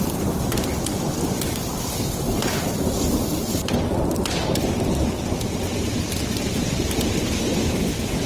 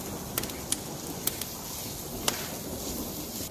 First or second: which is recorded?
second